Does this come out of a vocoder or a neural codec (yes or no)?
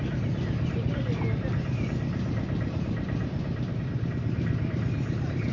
no